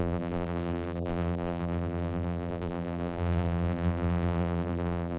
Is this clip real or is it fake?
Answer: fake